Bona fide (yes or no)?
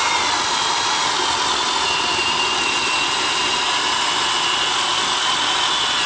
yes